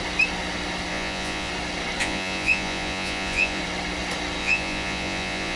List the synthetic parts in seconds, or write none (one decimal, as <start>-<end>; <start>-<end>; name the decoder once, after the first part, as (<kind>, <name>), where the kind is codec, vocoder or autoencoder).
0.9-1.5 (vocoder, Vocos); 2.0-3.6; 4.4-5.6